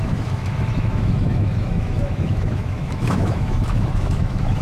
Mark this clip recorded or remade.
remade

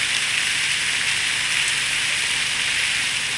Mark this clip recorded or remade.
recorded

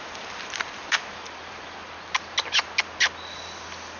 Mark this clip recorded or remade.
recorded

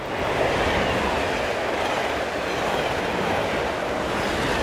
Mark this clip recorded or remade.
recorded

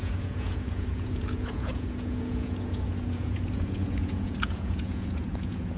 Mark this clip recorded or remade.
remade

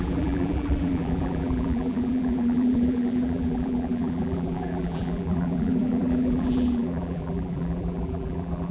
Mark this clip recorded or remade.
remade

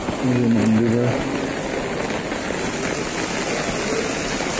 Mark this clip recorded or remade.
recorded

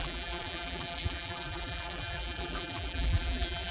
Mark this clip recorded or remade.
remade